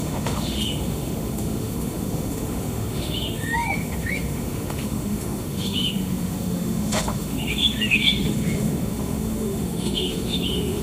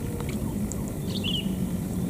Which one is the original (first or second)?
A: second